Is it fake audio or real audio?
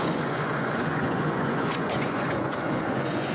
fake